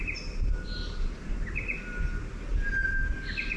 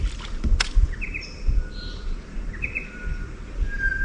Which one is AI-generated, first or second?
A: second